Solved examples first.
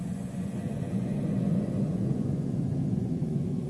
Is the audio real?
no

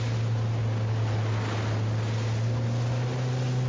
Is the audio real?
yes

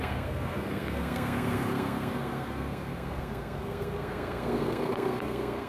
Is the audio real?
no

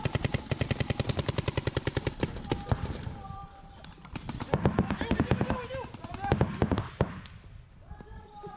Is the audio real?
yes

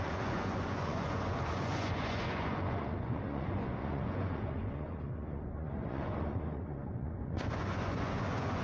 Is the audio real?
no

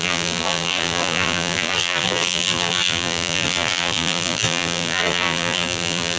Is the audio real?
no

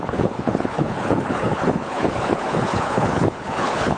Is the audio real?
no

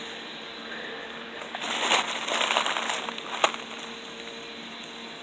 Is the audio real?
yes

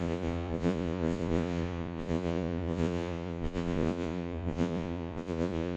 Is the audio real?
no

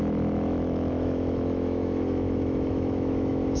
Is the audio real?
no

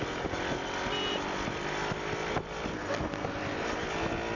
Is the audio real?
yes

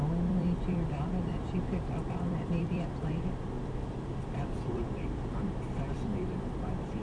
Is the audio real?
no